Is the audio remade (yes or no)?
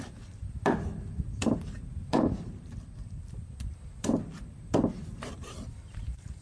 yes